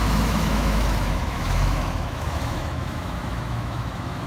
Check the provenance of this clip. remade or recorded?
remade